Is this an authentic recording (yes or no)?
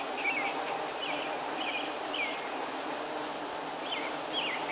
yes